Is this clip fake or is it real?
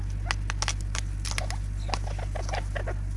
real